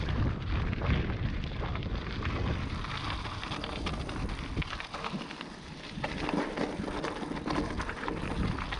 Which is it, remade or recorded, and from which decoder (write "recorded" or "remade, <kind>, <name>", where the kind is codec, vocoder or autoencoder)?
recorded